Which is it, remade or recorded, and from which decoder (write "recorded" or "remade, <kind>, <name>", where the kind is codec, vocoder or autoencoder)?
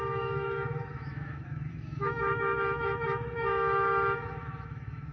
remade, autoencoder, DAC-VAE